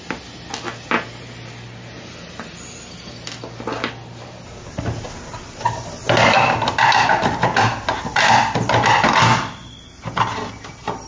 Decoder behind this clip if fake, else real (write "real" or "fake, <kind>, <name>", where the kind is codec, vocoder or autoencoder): real